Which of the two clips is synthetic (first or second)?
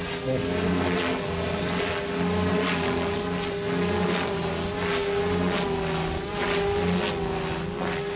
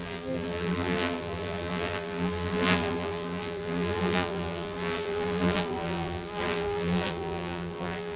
second